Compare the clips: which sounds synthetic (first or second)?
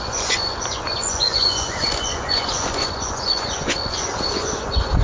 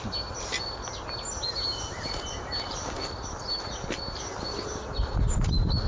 first